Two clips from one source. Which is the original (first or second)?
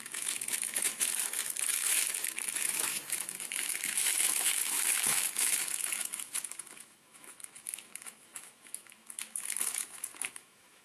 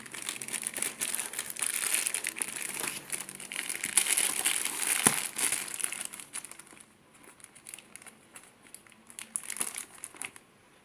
second